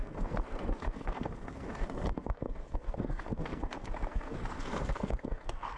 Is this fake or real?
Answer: fake